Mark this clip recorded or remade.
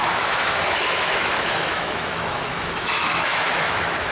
remade